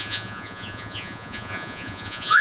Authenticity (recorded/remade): remade